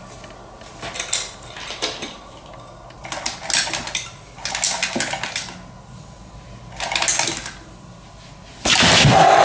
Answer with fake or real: real